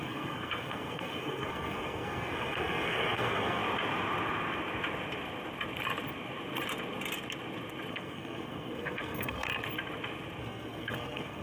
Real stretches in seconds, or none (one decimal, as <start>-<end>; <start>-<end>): 3.6-7.9; 9.5-10.4